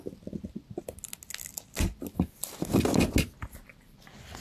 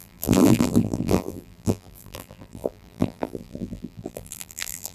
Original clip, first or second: first